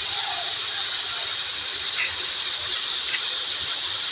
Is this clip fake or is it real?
fake